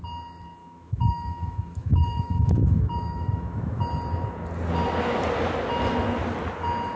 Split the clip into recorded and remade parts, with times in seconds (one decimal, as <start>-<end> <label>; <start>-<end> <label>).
0.0-0.6 recorded; 0.6-3.8 remade; 3.8-7.0 recorded